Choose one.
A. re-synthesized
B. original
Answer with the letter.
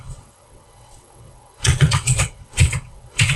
A